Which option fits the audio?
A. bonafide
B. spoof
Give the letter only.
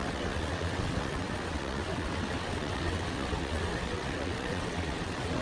B